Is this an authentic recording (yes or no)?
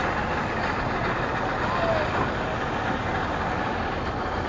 yes